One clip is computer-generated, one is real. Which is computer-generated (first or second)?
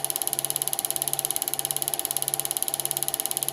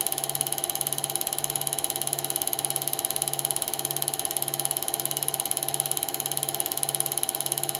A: second